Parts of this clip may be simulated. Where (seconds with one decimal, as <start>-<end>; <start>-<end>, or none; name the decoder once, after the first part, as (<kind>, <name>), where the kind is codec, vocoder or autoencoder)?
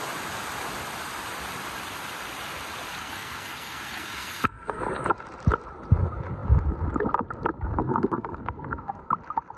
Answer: 3.0-4.8 (codec, SNAC); 7.8-9.1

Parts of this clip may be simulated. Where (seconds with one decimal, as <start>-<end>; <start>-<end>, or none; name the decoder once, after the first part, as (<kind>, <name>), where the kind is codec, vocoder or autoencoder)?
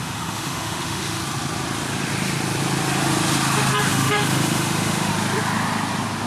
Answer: 0.0-1.2 (autoencoder, DAC-VAE); 3.9-5.1